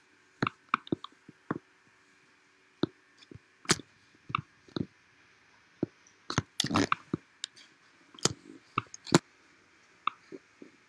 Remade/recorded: recorded